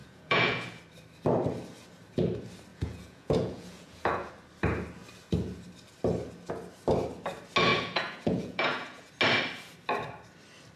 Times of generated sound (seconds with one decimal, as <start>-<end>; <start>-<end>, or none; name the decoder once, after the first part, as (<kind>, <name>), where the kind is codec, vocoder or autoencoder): 0.0-0.8 (vocoder, Vocos); 2.7-4.3; 7.7-9.1

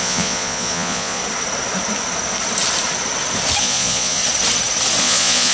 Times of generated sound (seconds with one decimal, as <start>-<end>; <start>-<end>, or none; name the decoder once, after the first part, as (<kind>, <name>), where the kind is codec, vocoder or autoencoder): 0.0-1.2 (vocoder, Vocos); 3.6-4.2; 5.0-5.5

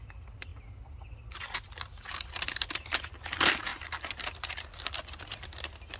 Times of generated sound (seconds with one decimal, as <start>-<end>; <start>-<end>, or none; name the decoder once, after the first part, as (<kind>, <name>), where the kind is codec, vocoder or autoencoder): 0.0-0.5 (vocoder, BigVGAN v2); 2.7-6.0

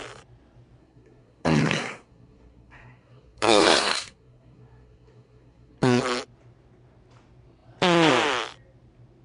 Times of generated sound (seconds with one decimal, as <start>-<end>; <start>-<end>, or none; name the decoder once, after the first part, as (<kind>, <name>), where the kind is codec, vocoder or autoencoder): 0.8-6.0 (codec, SNAC)

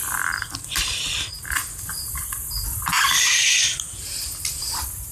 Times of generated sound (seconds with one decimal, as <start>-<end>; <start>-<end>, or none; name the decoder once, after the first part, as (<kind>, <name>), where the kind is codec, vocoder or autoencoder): none

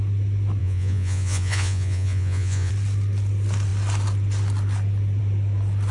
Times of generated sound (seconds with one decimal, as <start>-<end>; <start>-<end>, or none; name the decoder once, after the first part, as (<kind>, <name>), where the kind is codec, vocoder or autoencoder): 0.6-2.7 (vocoder, Vocos)

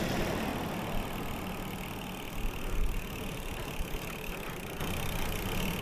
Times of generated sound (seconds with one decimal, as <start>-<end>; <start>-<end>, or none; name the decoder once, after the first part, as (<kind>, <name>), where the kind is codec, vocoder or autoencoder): 0.0-0.5 (vocoder, BigVGAN v2); 3.1-4.8

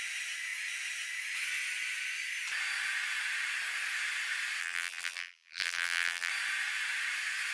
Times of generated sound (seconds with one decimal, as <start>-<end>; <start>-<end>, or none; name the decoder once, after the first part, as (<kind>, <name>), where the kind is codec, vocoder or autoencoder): 4.6-6.3 (vocoder, BigVGAN v2)